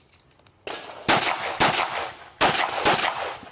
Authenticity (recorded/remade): recorded